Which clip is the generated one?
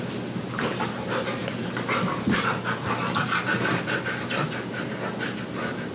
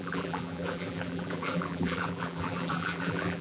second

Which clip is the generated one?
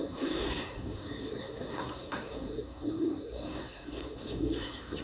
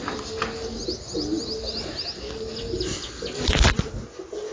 first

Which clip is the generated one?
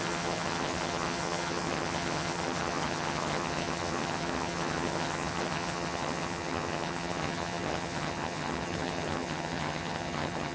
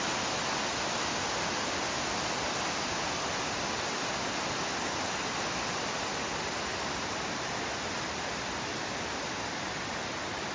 first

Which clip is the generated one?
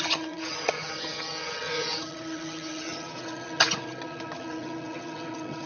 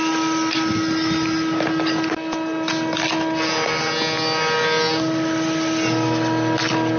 first